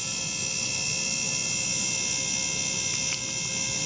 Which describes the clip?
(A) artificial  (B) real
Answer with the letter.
B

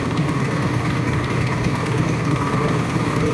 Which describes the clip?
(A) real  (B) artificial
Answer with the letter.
B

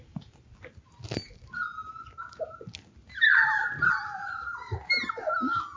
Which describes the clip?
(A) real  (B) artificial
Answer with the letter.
A